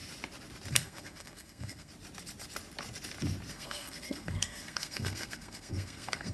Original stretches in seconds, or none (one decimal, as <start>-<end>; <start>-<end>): 0.0-0.7; 1.9-3.5